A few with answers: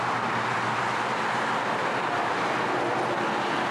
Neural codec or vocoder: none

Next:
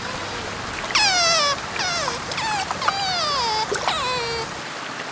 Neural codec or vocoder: none